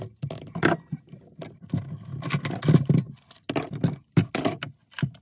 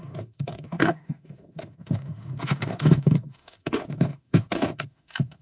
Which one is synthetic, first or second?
second